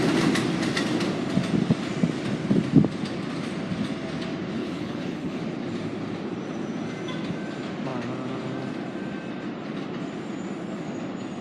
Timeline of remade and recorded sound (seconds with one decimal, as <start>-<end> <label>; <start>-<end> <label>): 0.0-4.6 recorded; 4.6-5.4 remade; 5.4-11.4 recorded